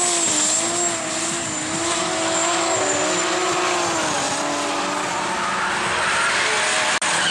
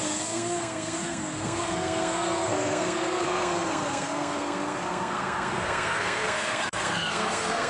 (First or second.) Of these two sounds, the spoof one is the second